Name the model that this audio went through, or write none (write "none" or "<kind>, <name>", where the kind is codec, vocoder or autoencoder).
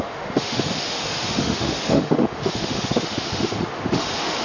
autoencoder, DAC-VAE